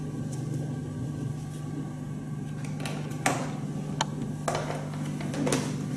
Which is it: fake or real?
real